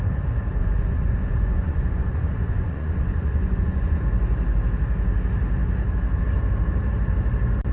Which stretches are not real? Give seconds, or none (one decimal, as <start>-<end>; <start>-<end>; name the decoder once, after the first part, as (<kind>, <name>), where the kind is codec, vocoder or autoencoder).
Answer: 0.6-4.0 (vocoder, Vocos)